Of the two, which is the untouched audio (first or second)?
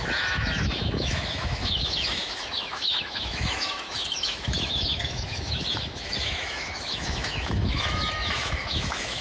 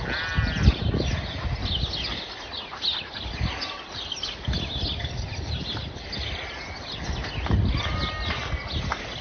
second